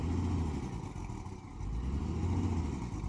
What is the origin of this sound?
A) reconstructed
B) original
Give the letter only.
B